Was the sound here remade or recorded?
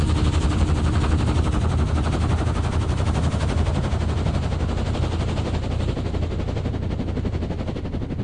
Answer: recorded